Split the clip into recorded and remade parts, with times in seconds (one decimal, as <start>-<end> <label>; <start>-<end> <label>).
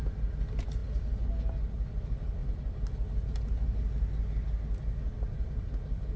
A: 0.0-6.2 recorded